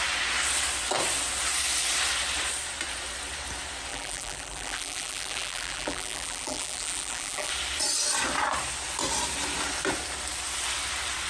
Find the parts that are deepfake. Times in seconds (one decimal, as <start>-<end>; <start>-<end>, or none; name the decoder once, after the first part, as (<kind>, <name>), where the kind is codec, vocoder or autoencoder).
3.9-7.5 (vocoder, BigVGAN v2)